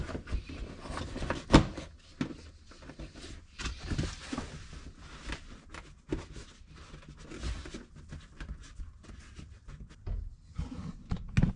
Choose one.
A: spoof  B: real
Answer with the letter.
B